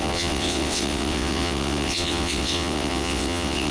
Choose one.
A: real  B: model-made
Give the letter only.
B